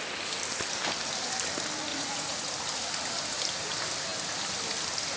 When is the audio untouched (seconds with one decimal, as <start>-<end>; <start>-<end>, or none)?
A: 0.0-1.9; 2.5-5.2